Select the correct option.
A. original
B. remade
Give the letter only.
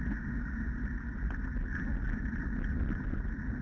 A